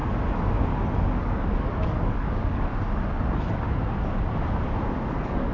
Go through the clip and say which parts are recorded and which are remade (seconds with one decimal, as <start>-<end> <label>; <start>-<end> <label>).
0.0-1.2 recorded; 1.2-2.7 remade; 2.7-5.1 recorded; 5.1-5.5 remade